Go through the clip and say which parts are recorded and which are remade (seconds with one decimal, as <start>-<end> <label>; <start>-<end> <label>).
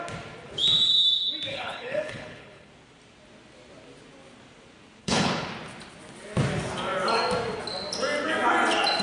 0.0-1.5 recorded; 1.5-2.7 remade; 2.7-5.0 recorded; 5.0-5.5 remade; 5.5-9.0 recorded